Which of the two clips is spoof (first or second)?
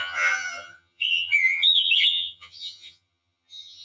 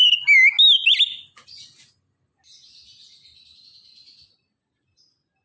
first